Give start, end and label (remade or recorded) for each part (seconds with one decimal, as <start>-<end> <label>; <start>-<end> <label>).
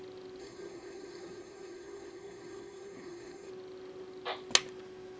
0.0-0.4 recorded; 0.4-3.5 remade; 3.5-5.2 recorded